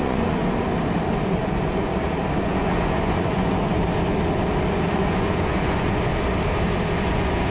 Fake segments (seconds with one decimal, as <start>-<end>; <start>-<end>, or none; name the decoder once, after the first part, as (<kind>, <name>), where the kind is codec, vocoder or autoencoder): 0.0-0.4 (vocoder, Vocos); 1.2-1.9; 2.4-3.7; 4.9-6.1; 7.1-7.5